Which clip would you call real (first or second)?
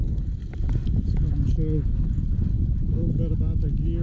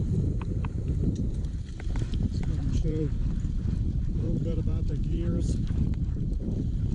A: first